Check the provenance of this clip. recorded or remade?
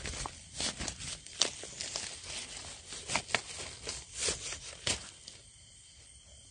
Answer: recorded